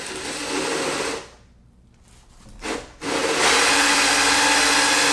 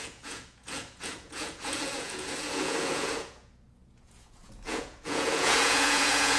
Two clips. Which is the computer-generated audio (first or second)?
second